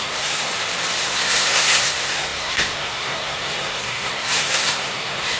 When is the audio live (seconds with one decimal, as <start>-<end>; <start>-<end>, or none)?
0.5-1.0

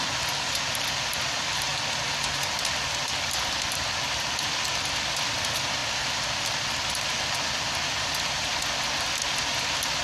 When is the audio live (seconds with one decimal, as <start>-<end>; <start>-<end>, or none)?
0.0-10.0

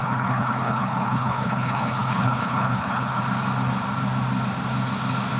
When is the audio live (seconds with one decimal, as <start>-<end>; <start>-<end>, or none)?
3.2-5.4

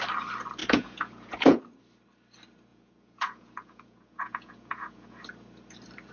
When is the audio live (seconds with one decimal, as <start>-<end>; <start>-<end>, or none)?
0.0-0.6; 1.6-2.7; 5.2-6.1

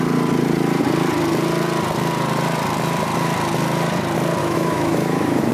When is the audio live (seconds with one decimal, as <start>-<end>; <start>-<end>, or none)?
0.0-4.4

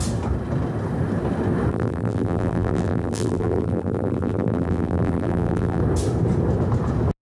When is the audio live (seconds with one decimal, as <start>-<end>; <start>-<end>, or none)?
0.0-1.7; 5.8-7.2

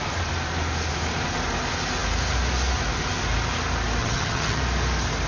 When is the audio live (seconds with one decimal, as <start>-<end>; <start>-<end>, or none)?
0.0-4.0; 4.6-5.3